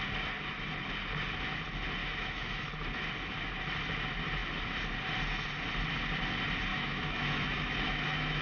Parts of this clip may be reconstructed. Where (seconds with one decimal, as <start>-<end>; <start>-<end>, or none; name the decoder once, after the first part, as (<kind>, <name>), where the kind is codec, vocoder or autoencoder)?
2.0-2.7 (autoencoder, DAC-VAE); 6.7-8.4